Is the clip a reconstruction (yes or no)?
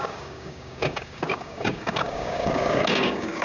yes